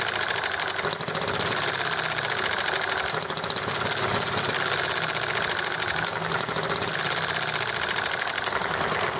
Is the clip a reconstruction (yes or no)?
no